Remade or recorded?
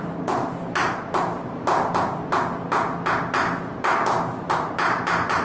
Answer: recorded